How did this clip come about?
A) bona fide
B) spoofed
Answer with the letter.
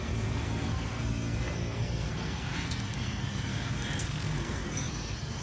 B